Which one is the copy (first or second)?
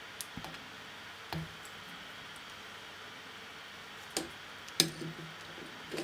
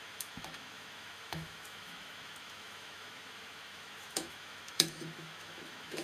second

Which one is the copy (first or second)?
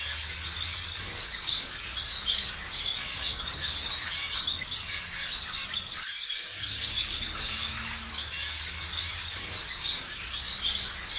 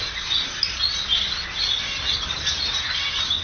first